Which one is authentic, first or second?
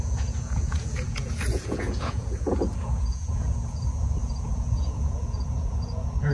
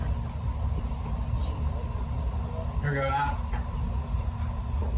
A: second